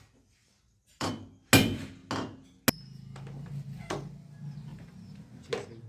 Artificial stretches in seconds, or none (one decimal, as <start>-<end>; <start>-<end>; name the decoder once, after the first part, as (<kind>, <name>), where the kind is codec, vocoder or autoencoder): 0.4-1.1 (vocoder, BigVGAN v2); 4.7-5.2